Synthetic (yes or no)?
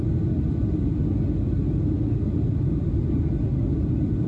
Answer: no